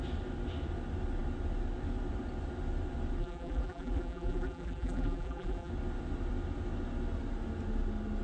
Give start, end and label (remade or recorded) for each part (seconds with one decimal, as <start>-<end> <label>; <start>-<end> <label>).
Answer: 0.0-3.2 recorded; 3.2-5.7 remade; 5.7-8.2 recorded